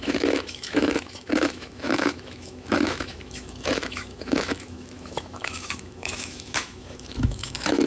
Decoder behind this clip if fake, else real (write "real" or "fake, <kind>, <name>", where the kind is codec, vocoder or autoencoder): fake, autoencoder, DAC-VAE